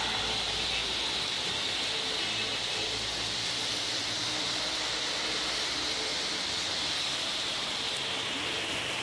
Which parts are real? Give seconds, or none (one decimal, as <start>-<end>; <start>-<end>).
0.0-2.5; 4.2-6.1; 7.3-9.0